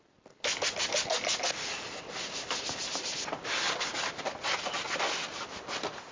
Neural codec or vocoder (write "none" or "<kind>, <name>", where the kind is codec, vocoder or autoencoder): none